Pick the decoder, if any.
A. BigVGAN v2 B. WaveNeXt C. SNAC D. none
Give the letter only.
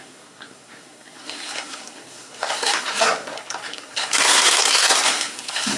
C